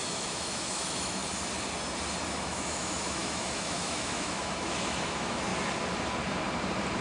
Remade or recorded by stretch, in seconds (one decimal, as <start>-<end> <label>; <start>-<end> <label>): 0.0-1.2 remade; 1.2-2.3 recorded; 2.3-5.5 remade; 5.5-7.0 recorded